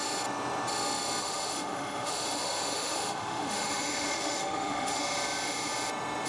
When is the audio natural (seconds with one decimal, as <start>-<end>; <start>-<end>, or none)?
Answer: 0.0-1.2; 5.0-6.3